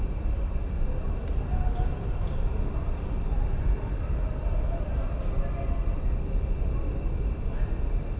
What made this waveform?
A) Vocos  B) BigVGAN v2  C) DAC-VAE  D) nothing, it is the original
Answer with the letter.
D